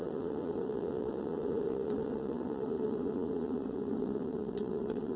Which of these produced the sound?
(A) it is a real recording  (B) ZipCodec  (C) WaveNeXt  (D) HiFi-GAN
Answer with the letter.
C